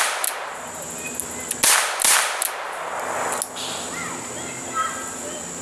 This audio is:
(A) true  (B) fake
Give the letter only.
A